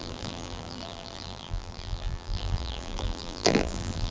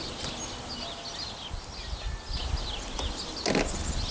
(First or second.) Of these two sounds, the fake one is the first